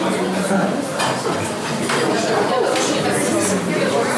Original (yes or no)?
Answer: yes